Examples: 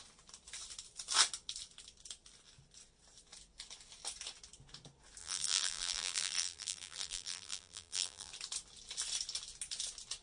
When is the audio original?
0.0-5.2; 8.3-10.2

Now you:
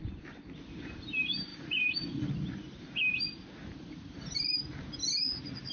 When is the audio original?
0.0-1.5; 2.3-3.6; 4.6-5.7

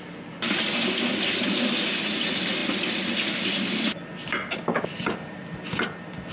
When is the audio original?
0.0-6.3